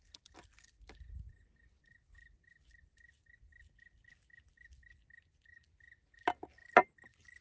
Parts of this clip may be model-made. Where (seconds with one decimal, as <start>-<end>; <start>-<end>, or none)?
none